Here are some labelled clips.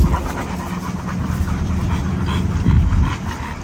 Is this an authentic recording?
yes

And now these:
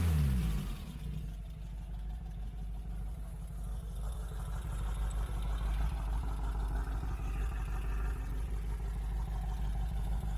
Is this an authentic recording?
yes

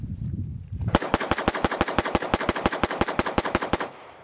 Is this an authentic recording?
no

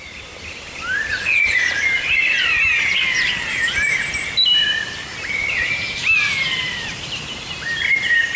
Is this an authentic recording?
no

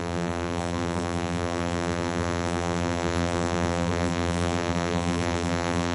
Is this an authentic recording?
no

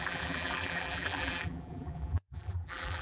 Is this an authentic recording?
no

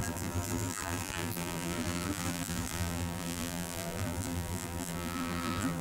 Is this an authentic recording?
no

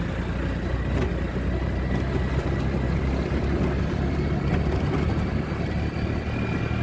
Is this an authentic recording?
yes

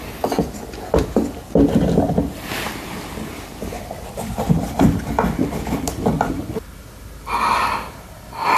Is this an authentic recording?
yes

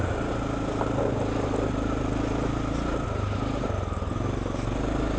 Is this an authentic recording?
yes